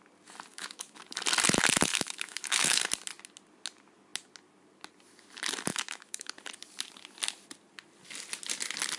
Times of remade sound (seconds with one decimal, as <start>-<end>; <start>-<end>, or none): 0.5-1.0; 1.9-2.8; 5.7-6.3